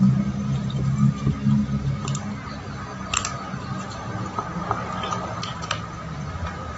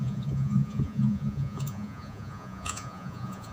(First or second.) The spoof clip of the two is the second